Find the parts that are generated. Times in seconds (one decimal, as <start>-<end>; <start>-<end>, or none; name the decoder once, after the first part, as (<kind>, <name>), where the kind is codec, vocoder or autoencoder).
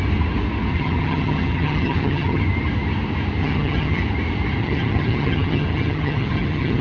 0.7-2.4 (vocoder, HiFi-GAN); 3.4-4.0; 4.6-6.8